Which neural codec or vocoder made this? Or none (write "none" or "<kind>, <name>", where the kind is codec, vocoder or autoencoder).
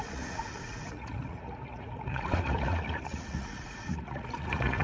vocoder, Vocos